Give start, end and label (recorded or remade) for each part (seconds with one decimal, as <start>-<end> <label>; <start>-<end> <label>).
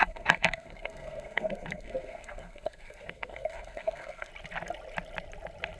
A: 0.0-4.3 remade; 4.3-5.8 recorded